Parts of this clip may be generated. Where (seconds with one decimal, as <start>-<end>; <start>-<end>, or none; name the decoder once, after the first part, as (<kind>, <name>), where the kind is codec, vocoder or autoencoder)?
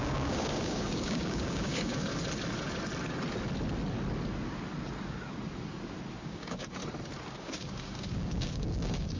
0.0-2.1 (codec, DAC); 6.2-6.8; 7.4-9.2